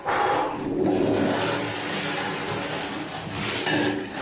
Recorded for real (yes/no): yes